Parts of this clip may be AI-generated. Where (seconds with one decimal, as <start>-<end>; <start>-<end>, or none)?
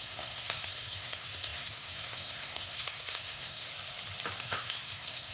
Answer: 0.0-3.7; 4.4-5.3